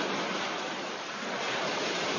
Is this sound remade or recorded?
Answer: recorded